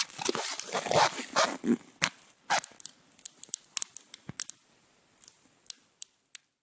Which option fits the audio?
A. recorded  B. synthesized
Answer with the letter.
A